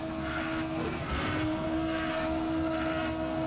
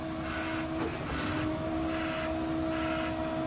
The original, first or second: second